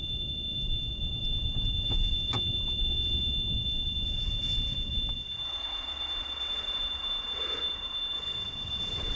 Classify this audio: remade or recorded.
remade